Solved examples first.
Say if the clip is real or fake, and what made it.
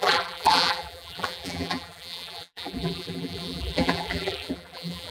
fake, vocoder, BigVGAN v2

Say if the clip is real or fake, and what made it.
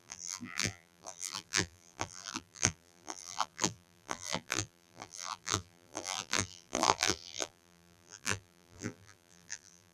fake, vocoder, BigVGAN v2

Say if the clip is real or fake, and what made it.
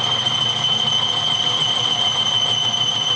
real